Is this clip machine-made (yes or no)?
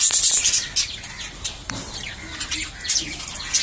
no